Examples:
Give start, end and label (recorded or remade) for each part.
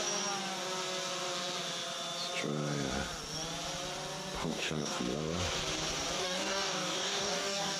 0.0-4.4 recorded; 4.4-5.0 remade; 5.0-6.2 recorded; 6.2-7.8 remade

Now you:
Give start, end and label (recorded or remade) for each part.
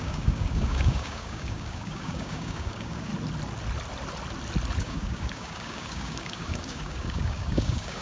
0.0-3.1 remade; 3.1-4.8 recorded; 4.8-8.0 remade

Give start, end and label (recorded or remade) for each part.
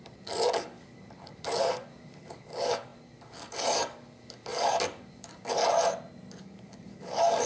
0.0-5.6 remade; 5.6-6.4 recorded; 6.4-7.5 remade